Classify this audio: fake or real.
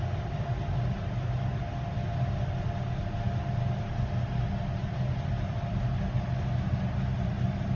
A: real